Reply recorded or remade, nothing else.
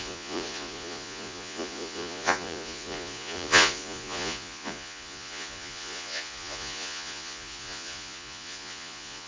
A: remade